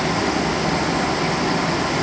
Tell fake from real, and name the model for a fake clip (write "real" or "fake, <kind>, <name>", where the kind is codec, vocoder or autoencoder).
real